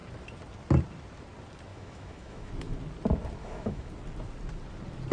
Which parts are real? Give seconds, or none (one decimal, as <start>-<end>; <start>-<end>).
0.0-1.7; 2.5-3.4; 3.9-5.1